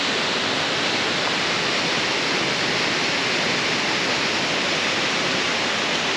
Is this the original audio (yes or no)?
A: yes